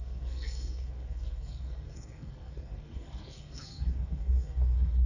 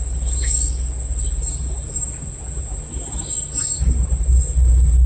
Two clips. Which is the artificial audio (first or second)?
first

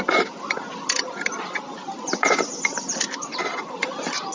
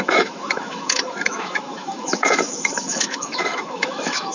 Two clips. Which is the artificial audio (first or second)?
second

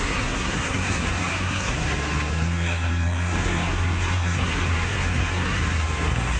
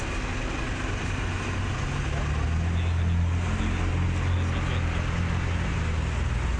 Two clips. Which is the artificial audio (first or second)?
first